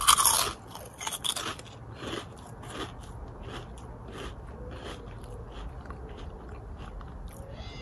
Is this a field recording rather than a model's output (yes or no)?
yes